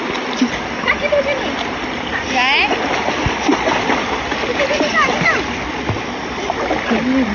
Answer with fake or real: real